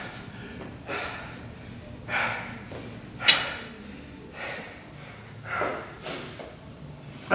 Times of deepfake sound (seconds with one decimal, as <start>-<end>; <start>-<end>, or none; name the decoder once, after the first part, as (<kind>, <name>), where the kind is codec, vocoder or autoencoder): none